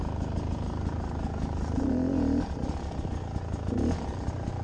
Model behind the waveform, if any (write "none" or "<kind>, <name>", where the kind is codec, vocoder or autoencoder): none